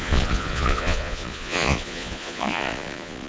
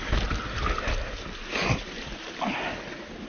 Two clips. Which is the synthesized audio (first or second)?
first